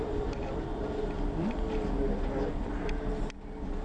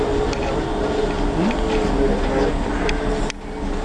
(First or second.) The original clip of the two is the second